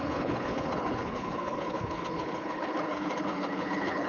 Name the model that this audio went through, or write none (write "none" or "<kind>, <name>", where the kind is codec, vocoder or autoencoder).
codec, HILCodec